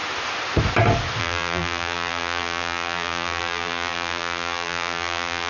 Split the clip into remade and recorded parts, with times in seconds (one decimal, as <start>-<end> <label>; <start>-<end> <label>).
0.0-1.2 recorded; 1.2-5.5 remade